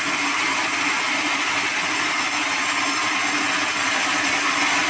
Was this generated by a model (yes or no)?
no